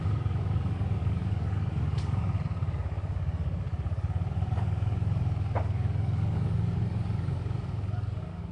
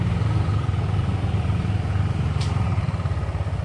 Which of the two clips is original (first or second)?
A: second